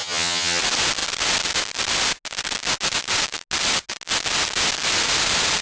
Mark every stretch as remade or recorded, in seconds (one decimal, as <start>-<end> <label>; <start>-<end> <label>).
0.0-0.6 remade; 0.6-5.6 recorded